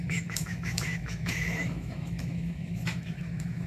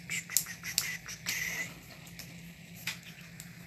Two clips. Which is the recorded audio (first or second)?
second